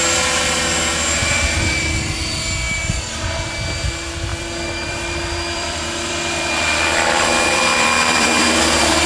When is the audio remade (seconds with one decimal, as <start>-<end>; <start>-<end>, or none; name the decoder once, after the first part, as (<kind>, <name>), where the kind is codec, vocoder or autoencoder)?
1.2-2.0 (vocoder, BigVGAN v2); 4.3-9.1